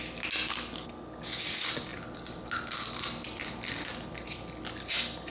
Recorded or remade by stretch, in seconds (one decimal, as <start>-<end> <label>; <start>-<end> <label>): 0.0-5.3 recorded